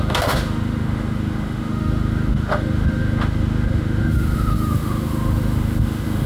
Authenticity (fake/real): fake